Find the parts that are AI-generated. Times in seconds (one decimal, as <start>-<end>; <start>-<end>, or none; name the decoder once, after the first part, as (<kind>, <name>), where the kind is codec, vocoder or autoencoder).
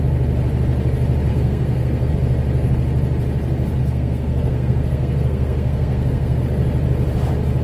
1.3-2.1 (codec, SNAC); 3.8-6.4